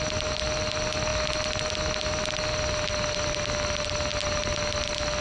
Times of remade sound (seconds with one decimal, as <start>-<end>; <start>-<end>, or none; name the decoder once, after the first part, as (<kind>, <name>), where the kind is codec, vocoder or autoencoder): none